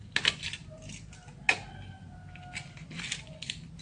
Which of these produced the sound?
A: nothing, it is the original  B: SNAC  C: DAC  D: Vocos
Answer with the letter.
A